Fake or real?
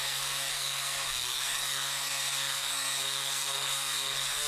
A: fake